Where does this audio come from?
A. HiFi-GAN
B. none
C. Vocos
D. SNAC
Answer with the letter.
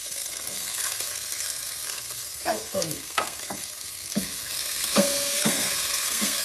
D